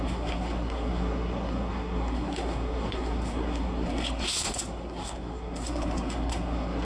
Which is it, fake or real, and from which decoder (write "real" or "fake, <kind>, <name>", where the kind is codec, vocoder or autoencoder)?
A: fake, codec, SNAC